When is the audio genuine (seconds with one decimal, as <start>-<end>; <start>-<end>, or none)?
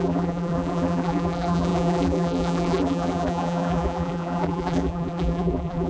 none